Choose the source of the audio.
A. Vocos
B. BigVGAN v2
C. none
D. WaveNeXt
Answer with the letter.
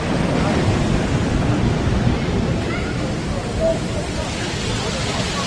C